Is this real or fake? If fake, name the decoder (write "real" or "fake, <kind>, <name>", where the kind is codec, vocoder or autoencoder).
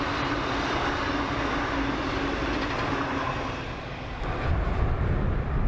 real